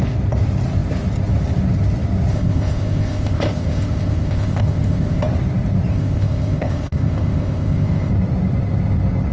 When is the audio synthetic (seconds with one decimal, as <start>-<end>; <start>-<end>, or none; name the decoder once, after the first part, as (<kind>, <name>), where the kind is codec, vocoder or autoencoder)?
2.3-5.2 (codec, ZipCodec); 5.9-8.1